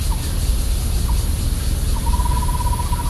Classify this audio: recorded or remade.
recorded